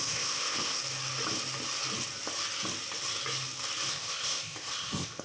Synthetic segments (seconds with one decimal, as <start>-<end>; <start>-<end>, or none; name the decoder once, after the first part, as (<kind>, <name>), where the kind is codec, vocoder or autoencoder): 0.0-0.8 (codec, ZipCodec); 3.9-5.2